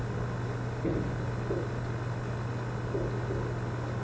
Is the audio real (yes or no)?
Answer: yes